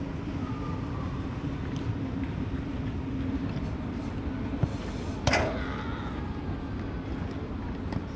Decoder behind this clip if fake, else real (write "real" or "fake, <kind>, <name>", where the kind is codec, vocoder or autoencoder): real